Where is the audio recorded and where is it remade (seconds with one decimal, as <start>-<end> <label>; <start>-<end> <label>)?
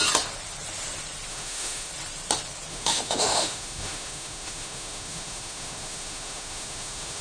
0.0-1.3 recorded; 1.3-1.9 remade; 1.9-2.7 recorded; 2.7-7.2 remade